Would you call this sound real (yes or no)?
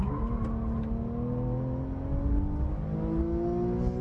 yes